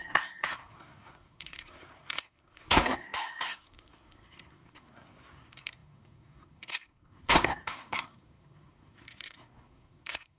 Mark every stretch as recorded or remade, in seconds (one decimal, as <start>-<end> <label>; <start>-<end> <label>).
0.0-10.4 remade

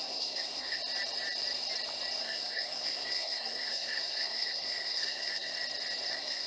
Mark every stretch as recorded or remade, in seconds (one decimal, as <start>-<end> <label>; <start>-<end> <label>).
0.0-0.8 remade; 0.8-2.2 recorded; 2.2-5.5 remade; 5.5-6.1 recorded; 6.1-6.5 remade

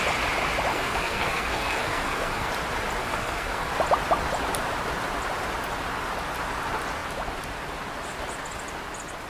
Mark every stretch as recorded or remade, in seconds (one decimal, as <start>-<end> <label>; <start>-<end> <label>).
0.0-0.7 recorded; 0.7-2.5 remade; 2.5-3.0 recorded; 3.0-3.7 remade; 3.7-9.3 recorded